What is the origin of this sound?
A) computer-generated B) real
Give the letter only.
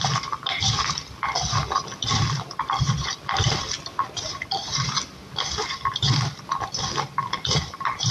B